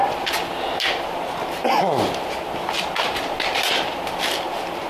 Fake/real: real